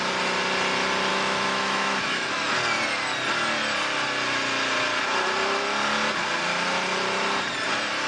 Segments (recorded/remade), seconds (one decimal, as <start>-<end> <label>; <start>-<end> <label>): 0.0-1.1 recorded; 1.1-2.4 remade; 2.4-8.1 recorded